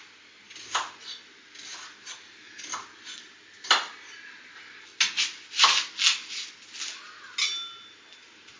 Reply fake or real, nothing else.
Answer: real